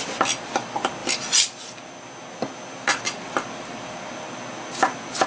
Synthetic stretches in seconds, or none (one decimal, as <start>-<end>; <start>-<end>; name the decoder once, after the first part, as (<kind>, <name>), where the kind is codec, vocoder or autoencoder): none